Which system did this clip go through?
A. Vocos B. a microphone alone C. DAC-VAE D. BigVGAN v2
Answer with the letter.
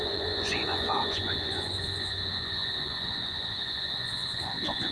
A